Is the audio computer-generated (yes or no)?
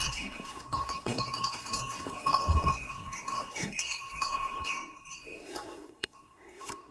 yes